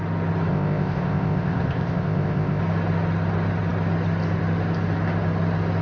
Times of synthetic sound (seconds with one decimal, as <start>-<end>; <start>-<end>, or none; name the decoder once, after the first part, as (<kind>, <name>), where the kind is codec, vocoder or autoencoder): 0.5-2.6 (codec, ZipCodec)

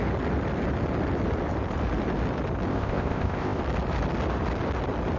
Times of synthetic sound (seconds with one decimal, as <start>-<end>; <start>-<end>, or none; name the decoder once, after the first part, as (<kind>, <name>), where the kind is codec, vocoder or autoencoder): 2.7-3.6 (codec, ZipCodec)